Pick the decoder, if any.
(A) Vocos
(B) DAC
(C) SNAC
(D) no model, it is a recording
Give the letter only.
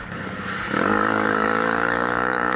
B